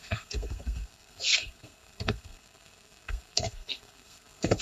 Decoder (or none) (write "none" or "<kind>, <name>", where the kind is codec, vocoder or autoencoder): codec, SNAC